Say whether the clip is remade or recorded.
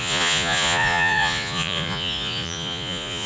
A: remade